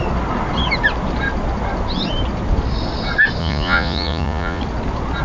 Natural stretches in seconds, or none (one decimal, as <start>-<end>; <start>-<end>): 0.0-3.4; 4.6-5.2